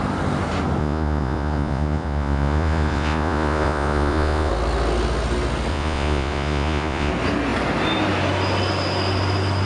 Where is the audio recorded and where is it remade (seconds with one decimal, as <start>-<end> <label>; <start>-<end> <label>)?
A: 0.0-0.8 recorded; 0.8-4.5 remade; 4.5-5.7 recorded; 5.7-7.1 remade; 7.1-9.7 recorded